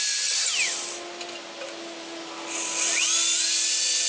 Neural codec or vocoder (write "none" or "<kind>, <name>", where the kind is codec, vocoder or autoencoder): none